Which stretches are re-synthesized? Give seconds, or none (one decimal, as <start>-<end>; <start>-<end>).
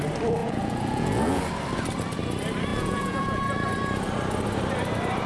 0.4-1.4; 2.7-3.4